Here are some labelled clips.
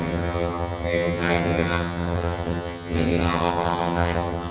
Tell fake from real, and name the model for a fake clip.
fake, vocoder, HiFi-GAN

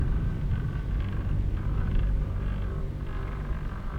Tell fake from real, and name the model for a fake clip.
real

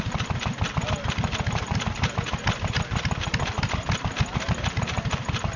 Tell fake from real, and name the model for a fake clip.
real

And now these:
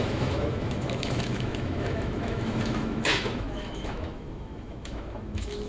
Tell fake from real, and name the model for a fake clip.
fake, autoencoder, DAC-VAE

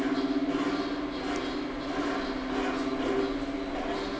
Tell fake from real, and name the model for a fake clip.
real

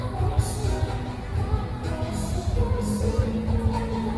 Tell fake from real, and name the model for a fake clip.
real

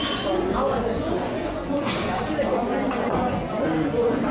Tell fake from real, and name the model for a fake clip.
fake, vocoder, Vocos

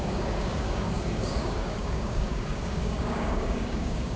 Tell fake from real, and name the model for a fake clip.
fake, codec, DAC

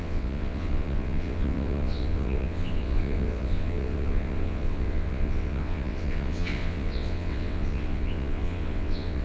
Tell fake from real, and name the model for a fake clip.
fake, vocoder, WaveNeXt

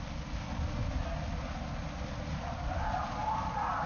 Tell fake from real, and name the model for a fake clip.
real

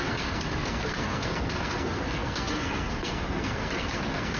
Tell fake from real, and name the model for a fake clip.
fake, codec, SNAC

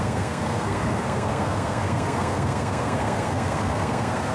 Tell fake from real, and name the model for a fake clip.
fake, codec, SNAC